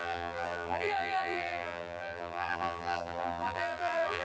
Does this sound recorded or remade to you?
remade